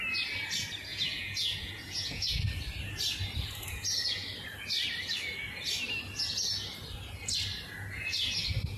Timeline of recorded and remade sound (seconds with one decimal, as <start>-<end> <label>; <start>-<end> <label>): 0.0-0.9 recorded; 0.9-2.4 remade; 2.4-8.8 recorded